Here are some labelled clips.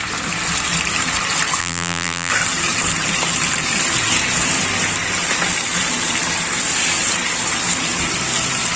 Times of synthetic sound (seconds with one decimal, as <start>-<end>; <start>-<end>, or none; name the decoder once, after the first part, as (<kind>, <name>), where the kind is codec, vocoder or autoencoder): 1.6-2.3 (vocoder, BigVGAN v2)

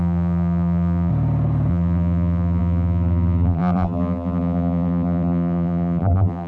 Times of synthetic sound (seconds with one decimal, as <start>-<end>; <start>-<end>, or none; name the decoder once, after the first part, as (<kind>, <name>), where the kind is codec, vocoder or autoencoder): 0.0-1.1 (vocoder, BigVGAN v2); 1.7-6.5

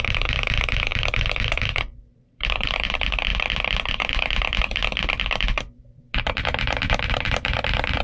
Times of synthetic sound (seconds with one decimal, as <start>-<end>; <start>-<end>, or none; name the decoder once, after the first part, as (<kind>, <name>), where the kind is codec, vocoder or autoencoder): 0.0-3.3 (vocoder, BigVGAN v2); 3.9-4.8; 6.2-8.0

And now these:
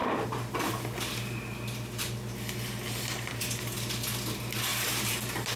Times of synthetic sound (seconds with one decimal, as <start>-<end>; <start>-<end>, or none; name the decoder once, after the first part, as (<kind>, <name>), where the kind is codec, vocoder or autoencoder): 4.7-5.6 (vocoder, BigVGAN v2)

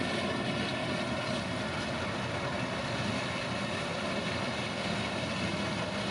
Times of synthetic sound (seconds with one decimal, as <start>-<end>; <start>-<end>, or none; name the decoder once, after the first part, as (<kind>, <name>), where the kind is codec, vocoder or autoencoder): none

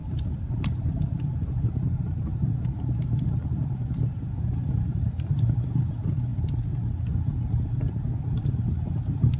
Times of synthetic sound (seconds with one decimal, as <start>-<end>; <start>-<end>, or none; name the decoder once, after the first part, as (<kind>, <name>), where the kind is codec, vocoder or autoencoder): 0.0-6.3 (vocoder, BigVGAN v2); 7.9-9.4